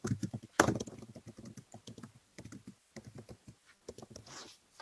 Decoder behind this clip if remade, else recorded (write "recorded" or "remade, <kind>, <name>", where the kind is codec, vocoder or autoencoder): recorded